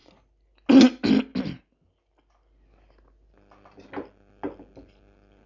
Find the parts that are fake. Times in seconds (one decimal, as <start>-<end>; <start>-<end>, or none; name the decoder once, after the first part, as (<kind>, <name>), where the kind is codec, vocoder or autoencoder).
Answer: none